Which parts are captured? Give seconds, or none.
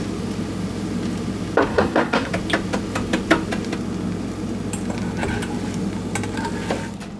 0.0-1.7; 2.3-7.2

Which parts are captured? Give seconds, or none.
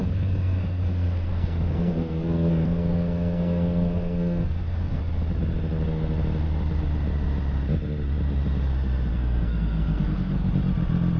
5.0-9.1; 10.5-11.2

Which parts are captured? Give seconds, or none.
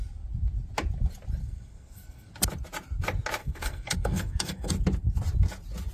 0.0-1.4; 2.3-3.4; 4.7-5.9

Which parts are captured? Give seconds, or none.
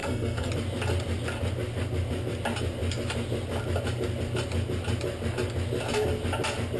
0.5-6.8